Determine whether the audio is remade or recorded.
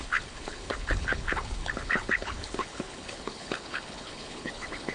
remade